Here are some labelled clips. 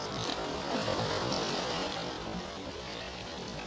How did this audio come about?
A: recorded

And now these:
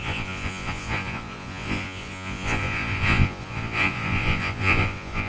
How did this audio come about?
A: remade